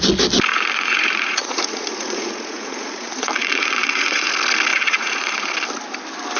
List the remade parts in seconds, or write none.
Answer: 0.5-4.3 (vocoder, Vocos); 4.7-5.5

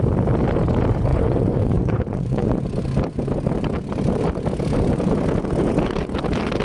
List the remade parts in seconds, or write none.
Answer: 1.1-2.6 (vocoder, Vocos)

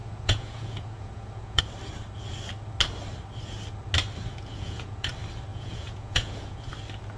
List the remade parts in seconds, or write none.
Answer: 0.0-1.6 (vocoder, Vocos); 4.3-5.1; 5.5-6.7